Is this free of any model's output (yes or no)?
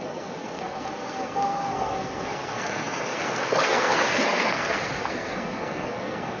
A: no